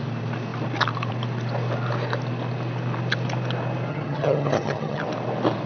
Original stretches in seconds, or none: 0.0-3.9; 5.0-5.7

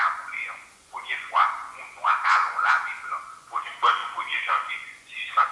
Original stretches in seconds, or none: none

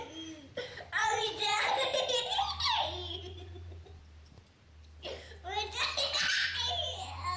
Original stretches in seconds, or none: 0.0-1.0; 1.7-7.4

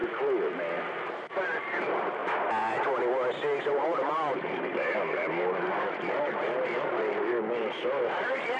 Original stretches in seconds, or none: 0.0-1.1; 2.2-3.6

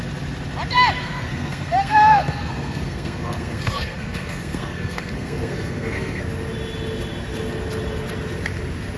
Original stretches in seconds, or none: 0.0-1.0; 6.2-9.0